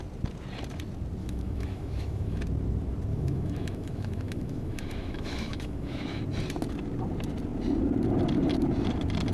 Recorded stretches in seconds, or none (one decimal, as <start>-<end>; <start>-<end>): 0.0-1.2; 2.4-3.1; 6.2-9.3